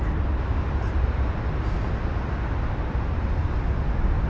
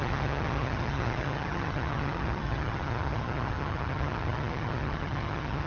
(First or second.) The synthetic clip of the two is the second